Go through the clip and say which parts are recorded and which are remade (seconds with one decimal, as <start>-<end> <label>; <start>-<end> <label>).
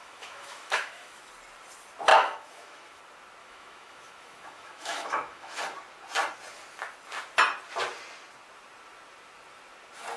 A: 0.0-1.3 remade; 1.3-2.1 recorded; 2.1-3.0 remade; 3.0-3.4 recorded; 3.4-5.6 remade; 5.6-10.2 recorded